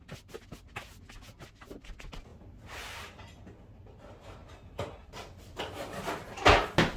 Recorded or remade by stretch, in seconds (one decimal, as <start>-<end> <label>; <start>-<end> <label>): 0.0-4.4 recorded; 4.4-5.6 remade; 5.6-7.0 recorded